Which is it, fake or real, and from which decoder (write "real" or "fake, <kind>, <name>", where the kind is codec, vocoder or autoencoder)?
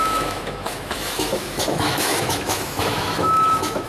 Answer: fake, autoencoder, DAC-VAE